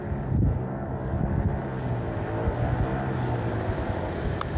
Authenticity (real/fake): real